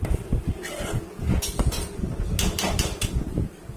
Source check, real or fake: real